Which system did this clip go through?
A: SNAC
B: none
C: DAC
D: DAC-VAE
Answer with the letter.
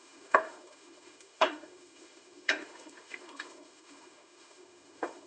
D